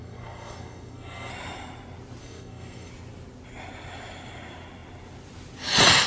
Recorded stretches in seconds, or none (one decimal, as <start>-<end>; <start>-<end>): 1.3-2.2; 2.9-6.1